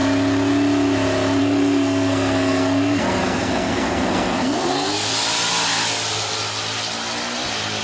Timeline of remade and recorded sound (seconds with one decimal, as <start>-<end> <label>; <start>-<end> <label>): 0.0-1.4 recorded; 1.4-5.1 remade; 5.1-7.8 recorded